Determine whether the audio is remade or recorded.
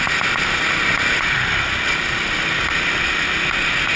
recorded